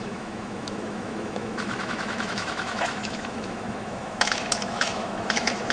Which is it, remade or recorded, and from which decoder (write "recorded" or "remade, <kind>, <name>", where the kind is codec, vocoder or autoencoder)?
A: remade, autoencoder, DAC-VAE